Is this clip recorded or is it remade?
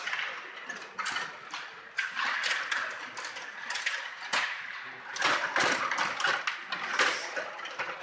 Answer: recorded